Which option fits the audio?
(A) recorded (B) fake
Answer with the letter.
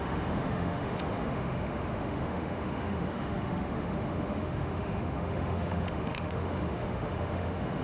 B